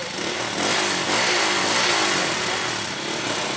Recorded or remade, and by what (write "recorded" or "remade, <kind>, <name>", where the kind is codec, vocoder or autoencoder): recorded